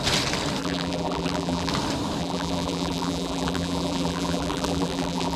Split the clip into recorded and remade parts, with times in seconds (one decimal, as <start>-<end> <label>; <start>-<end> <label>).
0.0-0.6 recorded; 0.6-1.7 remade; 1.7-2.2 recorded; 2.2-5.4 remade